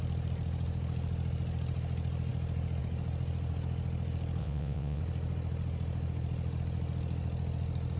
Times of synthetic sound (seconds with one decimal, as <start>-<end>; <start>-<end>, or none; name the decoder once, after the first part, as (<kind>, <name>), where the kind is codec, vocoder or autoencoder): 4.4-5.0 (vocoder, WaveNeXt)